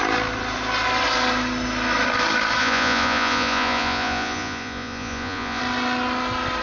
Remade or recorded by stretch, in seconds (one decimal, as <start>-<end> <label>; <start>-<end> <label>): 0.0-2.6 recorded; 2.6-5.6 remade; 5.6-6.6 recorded